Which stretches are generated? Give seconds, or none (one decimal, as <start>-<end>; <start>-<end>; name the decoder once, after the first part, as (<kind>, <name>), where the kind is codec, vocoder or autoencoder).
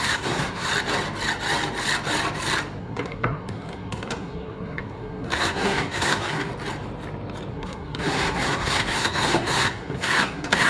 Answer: 0.0-0.7 (codec, SNAC); 2.8-6.5; 7.5-10.7